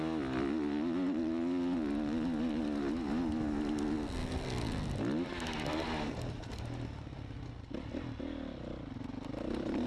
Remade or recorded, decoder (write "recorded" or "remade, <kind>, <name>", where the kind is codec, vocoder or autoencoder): recorded